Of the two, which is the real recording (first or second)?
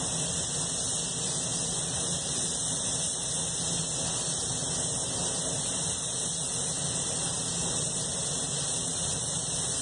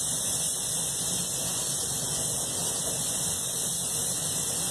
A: first